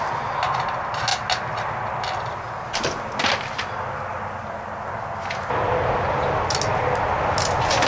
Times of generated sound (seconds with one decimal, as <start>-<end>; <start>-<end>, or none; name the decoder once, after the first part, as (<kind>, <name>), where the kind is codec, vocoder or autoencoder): none